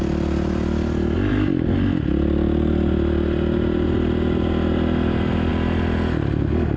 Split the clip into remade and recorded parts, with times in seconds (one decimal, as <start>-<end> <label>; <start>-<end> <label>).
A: 0.0-6.8 recorded